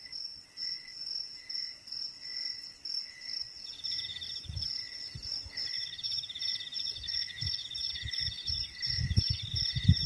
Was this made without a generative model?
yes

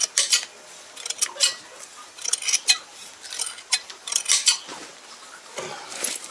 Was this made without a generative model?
yes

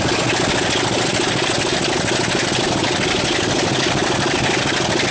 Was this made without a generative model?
yes